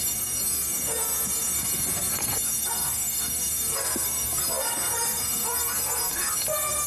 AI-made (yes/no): yes